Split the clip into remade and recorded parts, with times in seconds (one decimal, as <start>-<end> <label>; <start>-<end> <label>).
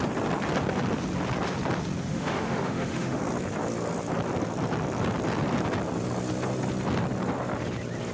0.0-2.1 recorded; 2.1-3.2 remade; 3.2-8.1 recorded